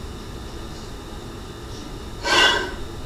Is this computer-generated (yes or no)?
no